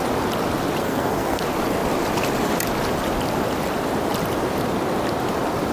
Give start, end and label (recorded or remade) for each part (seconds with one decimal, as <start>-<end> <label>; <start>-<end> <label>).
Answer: 0.0-0.8 recorded; 0.8-1.4 remade; 1.4-5.7 recorded